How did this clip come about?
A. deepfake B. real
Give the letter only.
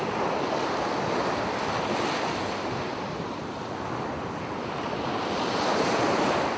B